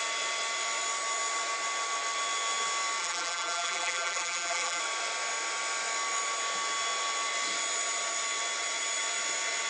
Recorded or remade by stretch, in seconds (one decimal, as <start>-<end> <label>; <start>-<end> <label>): 0.0-3.0 recorded; 3.0-4.8 remade; 4.8-9.7 recorded

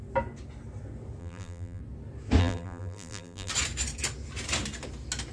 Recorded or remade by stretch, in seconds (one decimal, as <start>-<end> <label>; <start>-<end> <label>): 0.0-1.2 recorded; 1.2-1.8 remade; 1.8-2.4 recorded; 2.4-3.5 remade; 3.5-5.3 recorded

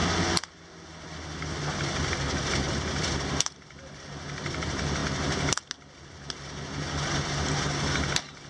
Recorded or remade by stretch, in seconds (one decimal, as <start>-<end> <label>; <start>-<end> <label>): 0.0-8.5 recorded